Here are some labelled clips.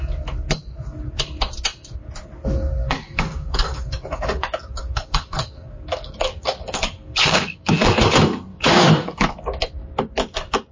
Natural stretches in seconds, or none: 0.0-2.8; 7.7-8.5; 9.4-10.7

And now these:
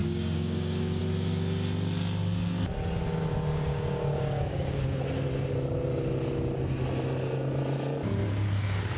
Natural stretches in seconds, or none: 1.0-3.5; 4.8-9.0

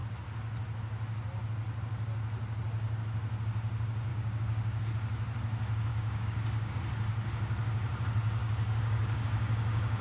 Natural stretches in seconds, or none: 0.0-4.1; 4.8-5.9; 6.7-8.4

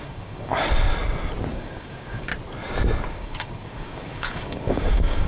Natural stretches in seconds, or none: 0.5-1.5; 2.3-3.1